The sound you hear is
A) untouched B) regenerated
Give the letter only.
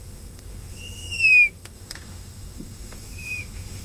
B